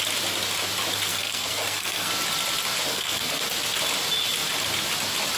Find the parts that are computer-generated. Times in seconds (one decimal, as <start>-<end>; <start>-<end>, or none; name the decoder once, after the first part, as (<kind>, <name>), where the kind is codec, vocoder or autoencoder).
1.1-2.1 (codec, SNAC); 2.9-3.4